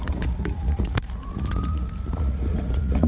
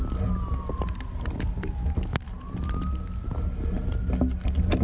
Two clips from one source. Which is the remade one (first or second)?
first